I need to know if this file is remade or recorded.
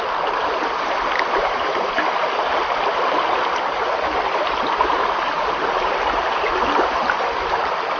recorded